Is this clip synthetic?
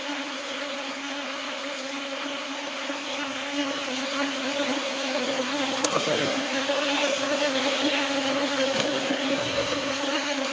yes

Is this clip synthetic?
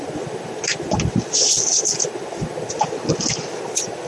no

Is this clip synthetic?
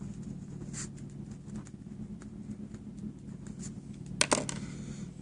no